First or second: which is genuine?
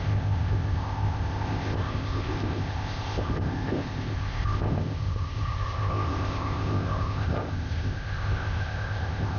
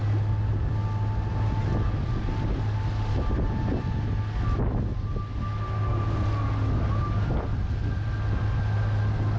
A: second